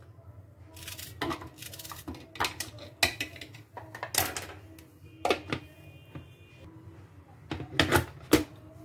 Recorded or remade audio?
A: recorded